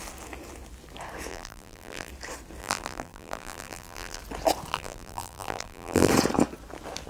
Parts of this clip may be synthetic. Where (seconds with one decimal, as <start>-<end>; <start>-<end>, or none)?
1.3-2.1; 2.6-4.2; 4.7-6.1